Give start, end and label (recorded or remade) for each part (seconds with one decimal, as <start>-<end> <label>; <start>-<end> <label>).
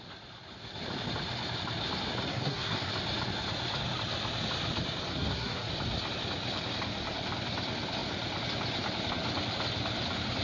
0.0-2.3 recorded; 2.3-2.9 remade; 2.9-5.1 recorded; 5.1-5.7 remade; 5.7-10.4 recorded